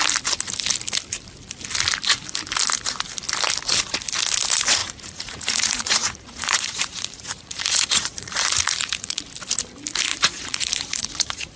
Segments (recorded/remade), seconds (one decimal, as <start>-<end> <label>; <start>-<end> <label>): 0.0-4.8 recorded; 4.8-9.3 remade; 9.3-10.1 recorded; 10.1-11.6 remade

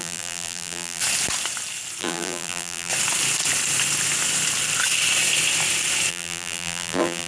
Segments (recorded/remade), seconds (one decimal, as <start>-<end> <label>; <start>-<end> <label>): 0.0-1.0 remade; 1.0-2.0 recorded; 2.0-2.9 remade; 2.9-6.1 recorded; 6.1-7.3 remade

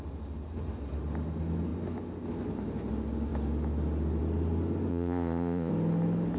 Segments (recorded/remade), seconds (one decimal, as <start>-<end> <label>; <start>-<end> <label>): 0.0-4.9 recorded; 4.9-5.7 remade; 5.7-6.4 recorded

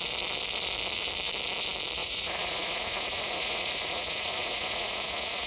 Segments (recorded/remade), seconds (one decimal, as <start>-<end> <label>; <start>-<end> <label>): 0.0-2.0 recorded; 2.0-5.5 remade

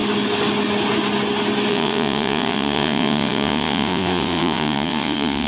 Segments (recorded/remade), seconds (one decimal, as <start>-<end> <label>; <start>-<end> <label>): 0.0-1.7 recorded; 1.7-5.5 remade

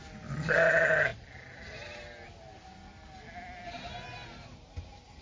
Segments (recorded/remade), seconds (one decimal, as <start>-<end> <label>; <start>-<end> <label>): 0.0-5.2 recorded

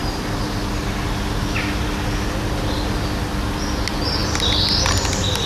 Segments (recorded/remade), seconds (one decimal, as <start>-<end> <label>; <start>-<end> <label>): 0.0-5.5 recorded

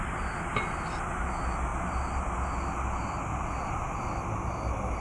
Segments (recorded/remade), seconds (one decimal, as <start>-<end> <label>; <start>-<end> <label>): 0.0-5.0 recorded